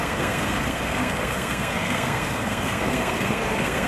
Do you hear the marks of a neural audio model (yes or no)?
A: yes